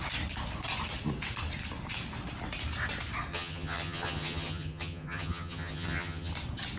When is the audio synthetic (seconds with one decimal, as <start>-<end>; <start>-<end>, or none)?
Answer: 3.3-6.3